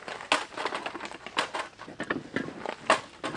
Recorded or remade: recorded